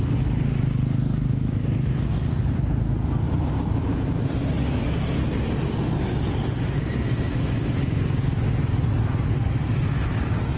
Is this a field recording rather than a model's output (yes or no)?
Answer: yes